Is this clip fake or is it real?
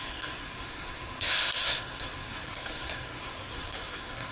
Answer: fake